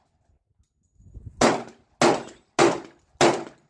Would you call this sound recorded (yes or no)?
yes